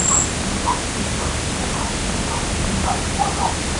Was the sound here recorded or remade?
recorded